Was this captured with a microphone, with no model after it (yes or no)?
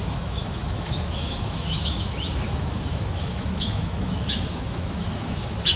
no